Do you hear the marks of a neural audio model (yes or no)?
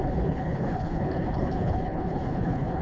yes